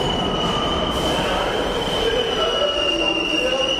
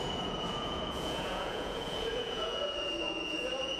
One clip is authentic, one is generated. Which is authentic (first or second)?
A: first